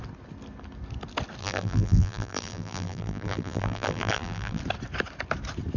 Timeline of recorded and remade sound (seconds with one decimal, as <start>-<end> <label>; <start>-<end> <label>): 0.0-1.4 recorded; 1.4-4.6 remade; 4.6-5.8 recorded

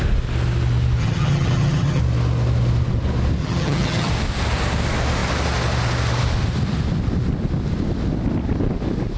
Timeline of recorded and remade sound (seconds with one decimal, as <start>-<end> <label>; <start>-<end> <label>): 0.0-1.0 recorded; 1.0-2.0 remade; 2.0-3.4 recorded; 3.4-4.1 remade; 4.1-9.2 recorded

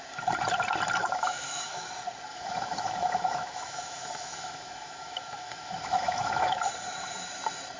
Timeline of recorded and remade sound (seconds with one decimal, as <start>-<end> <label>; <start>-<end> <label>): 0.0-1.0 recorded; 1.0-1.9 remade; 1.9-2.3 recorded; 2.3-6.7 remade; 6.7-7.8 recorded

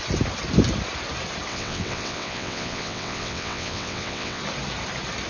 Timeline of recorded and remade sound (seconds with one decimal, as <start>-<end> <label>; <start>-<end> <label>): 0.0-1.5 recorded; 1.5-4.4 remade; 4.4-5.3 recorded

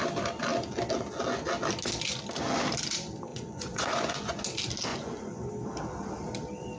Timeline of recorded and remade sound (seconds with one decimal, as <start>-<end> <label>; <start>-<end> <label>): 0.0-3.3 recorded; 3.3-4.4 remade; 4.4-4.9 recorded; 4.9-5.5 remade; 5.5-6.8 recorded